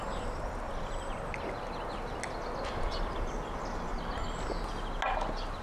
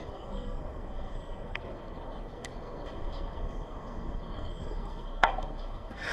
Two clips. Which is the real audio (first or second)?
first